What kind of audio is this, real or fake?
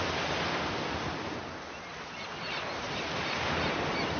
real